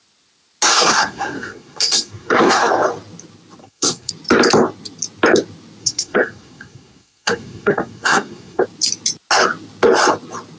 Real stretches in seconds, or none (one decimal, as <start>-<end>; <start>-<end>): 0.0-0.7; 2.7-3.6; 4.1-5.8; 8.6-10.6